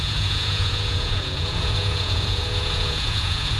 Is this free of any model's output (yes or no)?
no